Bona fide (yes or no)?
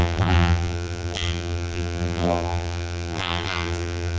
no